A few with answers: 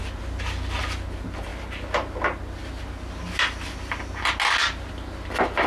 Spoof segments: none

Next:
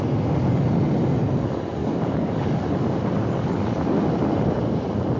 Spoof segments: 1.8-2.6 (codec, DAC)

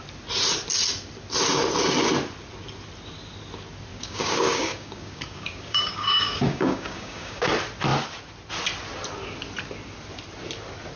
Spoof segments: 3.9-7.5 (codec, DAC)

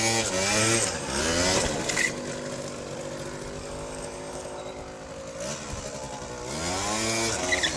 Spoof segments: 0.6-1.2 (codec, DAC); 3.6-4.6

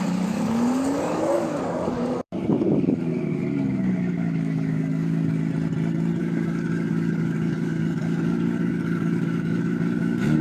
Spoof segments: 0.0-5.4 (codec, DAC); 6.2-10.4

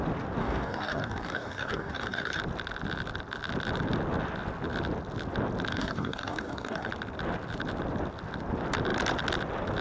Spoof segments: 0.4-2.4 (codec, DAC); 5.7-6.9

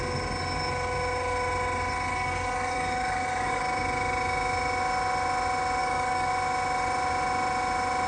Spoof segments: 2.1-3.6 (codec, DAC); 5.8-6.3